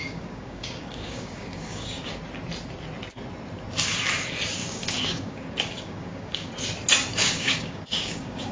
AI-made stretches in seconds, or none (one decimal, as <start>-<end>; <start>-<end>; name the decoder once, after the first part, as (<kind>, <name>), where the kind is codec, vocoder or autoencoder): 0.0-2.2 (codec, DAC); 4.6-6.5; 7.2-8.5